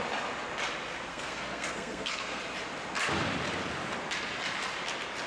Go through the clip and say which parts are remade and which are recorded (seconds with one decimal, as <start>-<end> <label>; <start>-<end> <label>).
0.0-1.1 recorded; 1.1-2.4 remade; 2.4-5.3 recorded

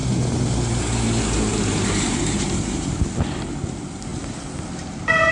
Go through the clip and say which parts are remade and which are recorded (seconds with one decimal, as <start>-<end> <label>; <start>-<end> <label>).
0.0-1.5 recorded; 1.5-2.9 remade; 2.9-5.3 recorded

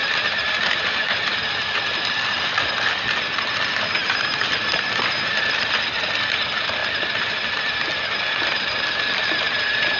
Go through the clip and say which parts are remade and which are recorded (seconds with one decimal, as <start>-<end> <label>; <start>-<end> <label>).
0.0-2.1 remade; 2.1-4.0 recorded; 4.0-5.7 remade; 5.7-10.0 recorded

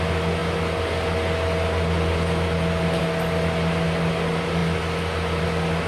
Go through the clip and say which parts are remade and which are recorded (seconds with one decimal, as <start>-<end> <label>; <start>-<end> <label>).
0.0-5.9 recorded

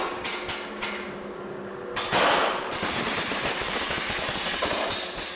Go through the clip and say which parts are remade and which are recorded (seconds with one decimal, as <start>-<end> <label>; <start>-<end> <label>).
0.0-2.4 recorded; 2.4-3.6 remade; 3.6-5.3 recorded

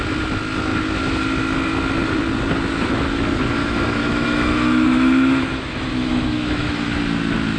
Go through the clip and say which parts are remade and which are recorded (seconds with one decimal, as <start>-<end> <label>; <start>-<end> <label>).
0.0-3.6 recorded; 3.6-7.0 remade; 7.0-7.6 recorded

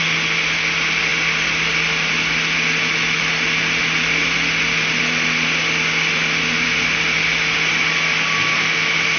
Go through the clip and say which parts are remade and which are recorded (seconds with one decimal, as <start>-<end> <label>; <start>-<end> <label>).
0.0-9.2 recorded